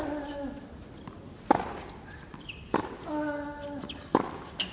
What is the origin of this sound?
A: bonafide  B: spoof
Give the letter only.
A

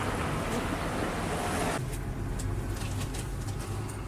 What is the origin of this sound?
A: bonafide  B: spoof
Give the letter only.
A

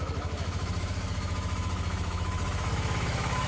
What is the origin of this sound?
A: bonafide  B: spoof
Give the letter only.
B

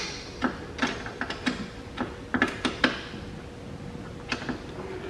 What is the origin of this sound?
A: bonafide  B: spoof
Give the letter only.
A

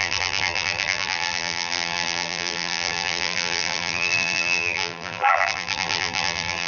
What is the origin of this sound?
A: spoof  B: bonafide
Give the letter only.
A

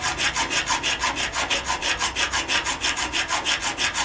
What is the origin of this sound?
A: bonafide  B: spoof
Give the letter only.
A